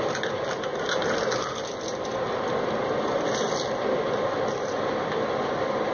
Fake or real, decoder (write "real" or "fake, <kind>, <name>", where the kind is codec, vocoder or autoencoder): real